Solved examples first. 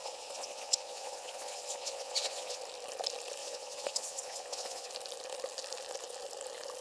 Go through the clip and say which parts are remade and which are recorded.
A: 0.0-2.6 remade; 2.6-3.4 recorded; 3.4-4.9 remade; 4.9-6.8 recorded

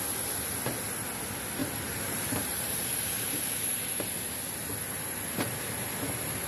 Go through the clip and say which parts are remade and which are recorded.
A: 0.0-1.6 recorded; 1.6-3.6 remade; 3.6-6.5 recorded

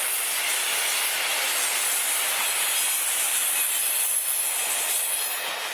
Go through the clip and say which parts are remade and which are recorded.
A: 0.0-5.7 recorded

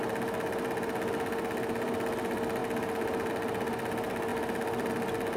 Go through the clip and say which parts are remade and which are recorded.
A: 0.0-5.4 recorded

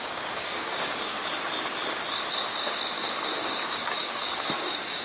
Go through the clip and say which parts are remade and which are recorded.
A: 0.0-1.2 remade; 1.2-2.3 recorded; 2.3-5.0 remade

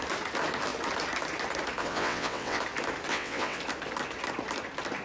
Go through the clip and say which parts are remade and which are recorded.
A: 0.0-1.8 recorded; 1.8-2.6 remade; 2.6-3.1 recorded; 3.1-3.6 remade; 3.6-5.0 recorded

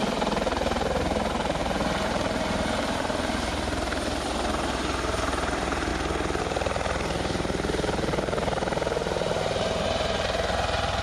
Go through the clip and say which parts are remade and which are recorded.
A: 0.0-5.9 remade; 5.9-6.4 recorded; 6.4-11.0 remade

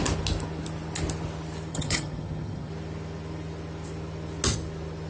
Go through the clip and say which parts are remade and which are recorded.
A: 0.0-1.7 recorded; 1.7-2.7 remade; 2.7-5.1 recorded